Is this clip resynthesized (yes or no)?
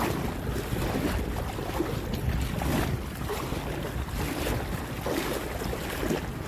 no